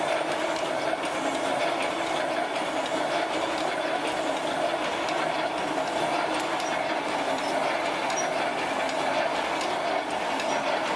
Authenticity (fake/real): real